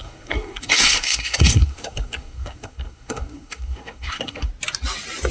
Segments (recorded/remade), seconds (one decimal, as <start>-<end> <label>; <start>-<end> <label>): 0.0-4.5 remade; 4.5-5.3 recorded